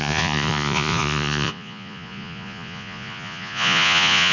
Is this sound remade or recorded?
remade